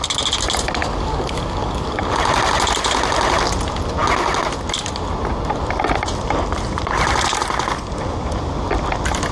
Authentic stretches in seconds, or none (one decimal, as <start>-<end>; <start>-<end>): 0.0-0.8; 2.0-9.3